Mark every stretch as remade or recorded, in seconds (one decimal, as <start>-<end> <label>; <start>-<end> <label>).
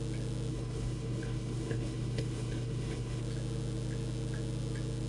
0.0-0.5 recorded; 0.5-3.2 remade; 3.2-5.1 recorded